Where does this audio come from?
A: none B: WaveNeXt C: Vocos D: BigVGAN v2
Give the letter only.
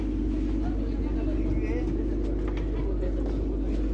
A